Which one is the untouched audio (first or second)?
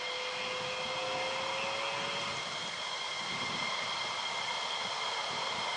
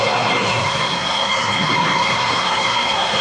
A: first